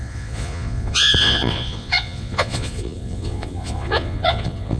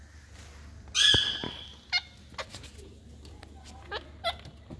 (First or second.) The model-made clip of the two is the first